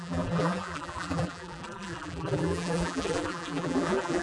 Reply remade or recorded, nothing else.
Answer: remade